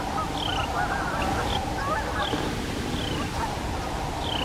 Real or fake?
fake